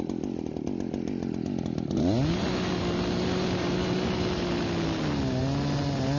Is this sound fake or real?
real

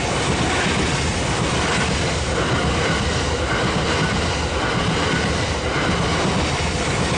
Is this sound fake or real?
real